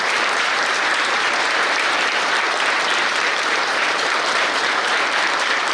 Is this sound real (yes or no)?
no